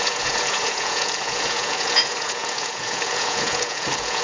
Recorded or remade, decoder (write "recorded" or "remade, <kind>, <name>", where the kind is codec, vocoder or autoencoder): remade, vocoder, Vocos